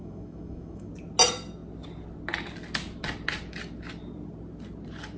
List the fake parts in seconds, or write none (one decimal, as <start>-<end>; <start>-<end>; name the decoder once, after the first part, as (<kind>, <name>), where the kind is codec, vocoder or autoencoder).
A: 0.0-0.9 (autoencoder, DAC-VAE)